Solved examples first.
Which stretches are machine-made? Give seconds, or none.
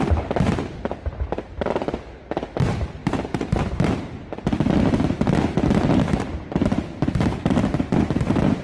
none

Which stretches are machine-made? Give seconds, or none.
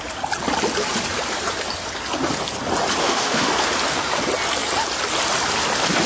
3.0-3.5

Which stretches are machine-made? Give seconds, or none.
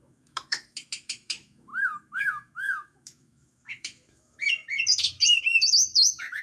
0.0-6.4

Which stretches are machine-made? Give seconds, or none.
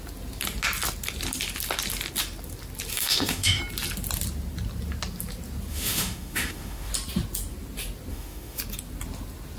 2.9-3.6; 5.7-6.9; 8.1-8.6